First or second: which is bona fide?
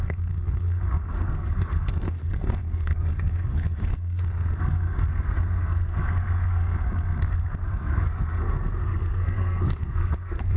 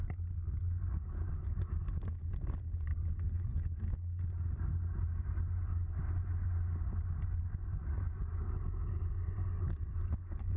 second